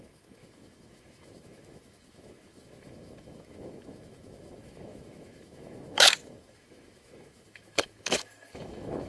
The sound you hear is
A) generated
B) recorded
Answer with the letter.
A